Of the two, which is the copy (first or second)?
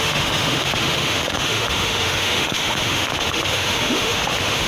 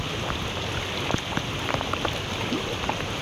first